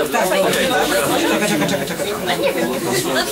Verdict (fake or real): fake